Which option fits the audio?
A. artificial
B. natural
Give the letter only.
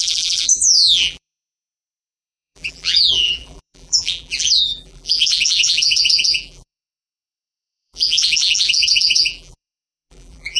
A